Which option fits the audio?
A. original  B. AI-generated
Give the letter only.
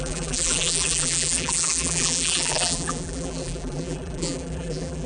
B